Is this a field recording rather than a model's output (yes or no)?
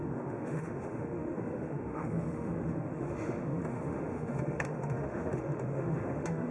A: no